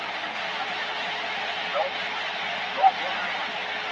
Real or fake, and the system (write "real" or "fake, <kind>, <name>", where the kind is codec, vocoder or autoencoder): real